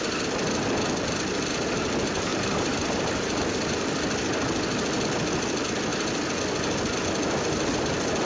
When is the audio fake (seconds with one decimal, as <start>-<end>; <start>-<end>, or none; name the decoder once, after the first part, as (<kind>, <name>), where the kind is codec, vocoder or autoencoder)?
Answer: 2.3-3.5 (vocoder, BigVGAN v2)